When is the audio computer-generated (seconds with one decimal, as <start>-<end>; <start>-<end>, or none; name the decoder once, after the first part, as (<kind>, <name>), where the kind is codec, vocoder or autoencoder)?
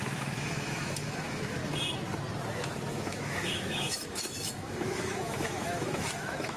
0.0-1.6 (autoencoder, DAC-VAE); 2.9-6.6